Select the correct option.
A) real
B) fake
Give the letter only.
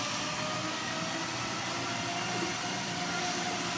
A